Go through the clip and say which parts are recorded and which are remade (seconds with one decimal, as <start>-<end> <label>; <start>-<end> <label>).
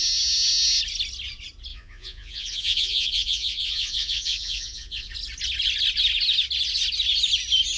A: 0.0-1.7 recorded; 1.7-5.1 remade; 5.1-7.8 recorded